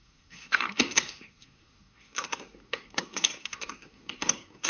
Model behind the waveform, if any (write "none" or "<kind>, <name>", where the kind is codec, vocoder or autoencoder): codec, SNAC